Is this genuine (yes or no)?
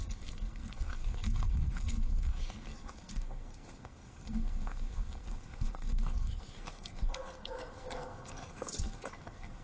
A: no